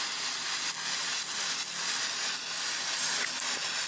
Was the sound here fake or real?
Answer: real